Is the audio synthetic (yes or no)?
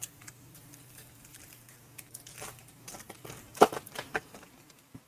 yes